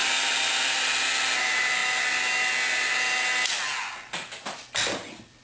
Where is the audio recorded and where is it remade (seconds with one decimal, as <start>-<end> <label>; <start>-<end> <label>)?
0.0-1.8 remade; 1.8-4.0 recorded; 4.0-5.4 remade